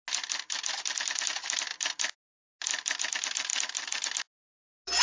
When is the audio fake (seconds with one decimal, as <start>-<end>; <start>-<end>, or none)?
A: none